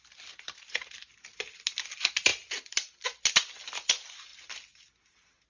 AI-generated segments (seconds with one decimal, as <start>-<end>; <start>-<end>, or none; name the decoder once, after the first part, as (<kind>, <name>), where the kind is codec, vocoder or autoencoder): none